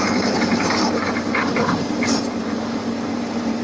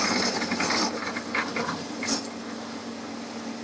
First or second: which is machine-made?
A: first